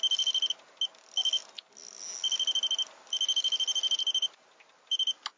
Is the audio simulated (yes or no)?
no